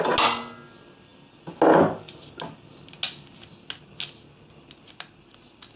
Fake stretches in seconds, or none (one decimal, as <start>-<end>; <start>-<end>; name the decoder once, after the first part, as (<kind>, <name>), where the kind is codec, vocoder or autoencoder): none